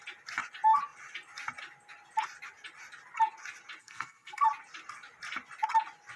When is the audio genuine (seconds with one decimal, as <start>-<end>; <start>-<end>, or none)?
0.0-3.8; 4.4-6.2